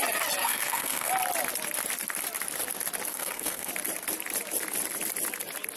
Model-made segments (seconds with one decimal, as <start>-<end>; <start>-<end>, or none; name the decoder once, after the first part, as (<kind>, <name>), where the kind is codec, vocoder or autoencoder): 0.4-1.1 (codec, SNAC); 3.1-3.7